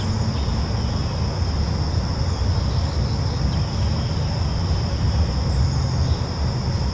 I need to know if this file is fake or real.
real